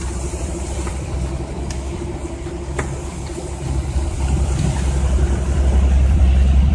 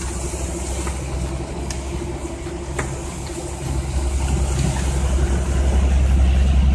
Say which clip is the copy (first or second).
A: first